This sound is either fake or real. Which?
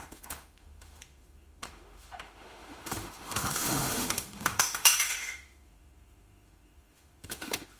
fake